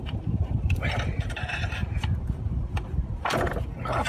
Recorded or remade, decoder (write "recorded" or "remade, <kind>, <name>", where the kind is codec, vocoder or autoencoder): remade, vocoder, BigVGAN v2